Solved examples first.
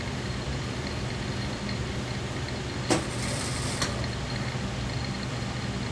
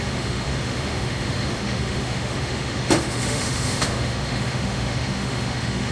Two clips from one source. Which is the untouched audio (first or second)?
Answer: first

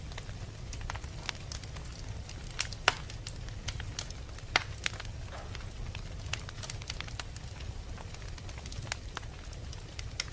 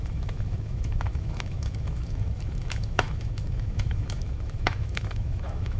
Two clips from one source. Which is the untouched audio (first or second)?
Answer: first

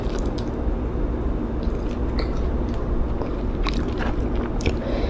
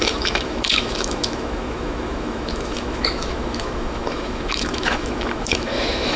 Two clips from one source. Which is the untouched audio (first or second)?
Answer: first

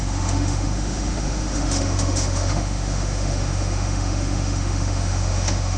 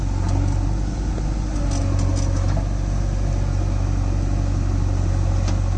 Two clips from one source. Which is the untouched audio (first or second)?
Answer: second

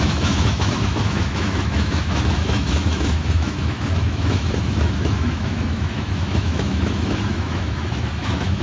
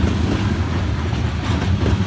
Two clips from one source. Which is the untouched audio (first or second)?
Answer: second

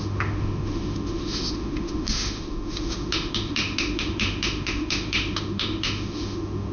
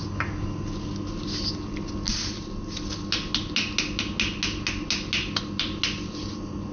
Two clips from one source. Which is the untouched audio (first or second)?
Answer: second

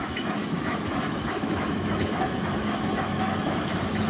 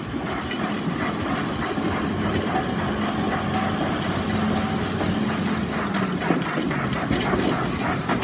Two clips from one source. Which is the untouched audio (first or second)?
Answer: second